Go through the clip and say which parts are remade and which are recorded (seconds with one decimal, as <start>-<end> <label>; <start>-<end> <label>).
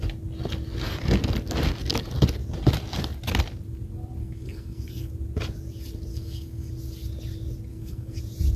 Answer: 0.0-4.2 recorded; 4.2-5.1 remade; 5.1-6.1 recorded; 6.1-6.7 remade; 6.7-7.7 recorded; 7.7-8.2 remade; 8.2-8.6 recorded